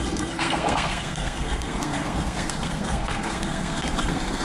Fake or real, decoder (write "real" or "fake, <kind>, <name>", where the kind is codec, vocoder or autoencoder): fake, codec, SNAC